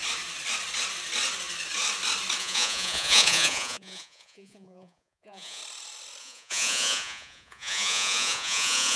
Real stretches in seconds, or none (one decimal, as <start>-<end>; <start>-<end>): 0.0-2.4; 5.6-6.2

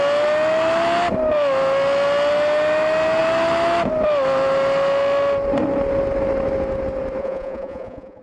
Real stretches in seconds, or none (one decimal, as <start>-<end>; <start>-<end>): 0.0-7.2

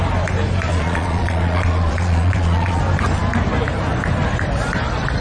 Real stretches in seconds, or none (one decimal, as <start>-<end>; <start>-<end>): 0.0-0.7; 2.8-5.2

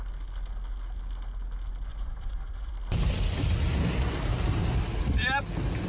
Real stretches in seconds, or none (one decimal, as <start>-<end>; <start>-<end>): 0.0-1.9; 2.7-5.9

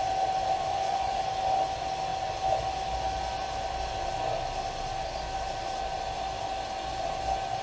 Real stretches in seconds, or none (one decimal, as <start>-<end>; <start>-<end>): 0.0-0.7; 1.2-7.6